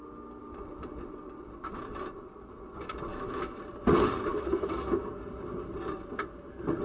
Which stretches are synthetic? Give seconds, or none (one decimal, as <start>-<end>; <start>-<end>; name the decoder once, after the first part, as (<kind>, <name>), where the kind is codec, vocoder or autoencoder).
3.1-3.6 (autoencoder, DAC-VAE); 4.3-5.1